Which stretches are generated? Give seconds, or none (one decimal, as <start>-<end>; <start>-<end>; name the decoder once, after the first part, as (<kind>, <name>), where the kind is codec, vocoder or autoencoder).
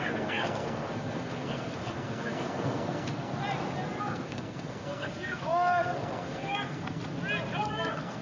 0.0-3.3 (codec, SNAC); 4.0-7.0; 7.6-8.2